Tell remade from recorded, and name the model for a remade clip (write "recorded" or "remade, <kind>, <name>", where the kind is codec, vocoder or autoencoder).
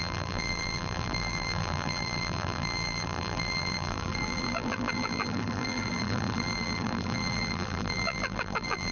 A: remade, vocoder, BigVGAN v2